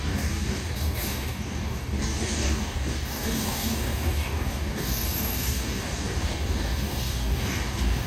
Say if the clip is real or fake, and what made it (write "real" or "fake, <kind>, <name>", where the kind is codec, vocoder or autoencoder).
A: fake, codec, DAC